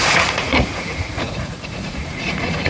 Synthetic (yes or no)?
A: yes